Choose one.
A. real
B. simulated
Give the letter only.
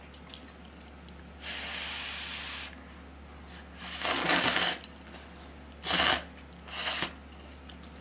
A